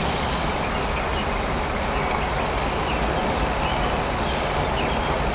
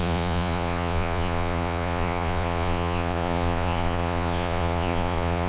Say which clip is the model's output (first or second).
second